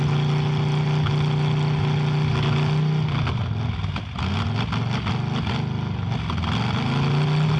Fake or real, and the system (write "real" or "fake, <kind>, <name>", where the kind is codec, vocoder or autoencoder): real